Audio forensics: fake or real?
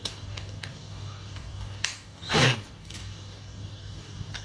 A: fake